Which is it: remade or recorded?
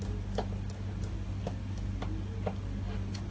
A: recorded